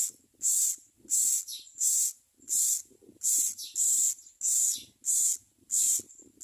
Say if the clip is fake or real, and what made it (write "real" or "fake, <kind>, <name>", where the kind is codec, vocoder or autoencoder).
real